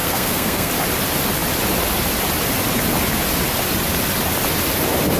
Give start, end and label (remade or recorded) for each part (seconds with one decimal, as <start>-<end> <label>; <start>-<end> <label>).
0.0-0.7 remade; 0.7-5.2 recorded